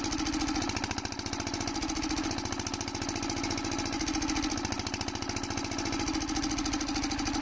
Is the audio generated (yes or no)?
no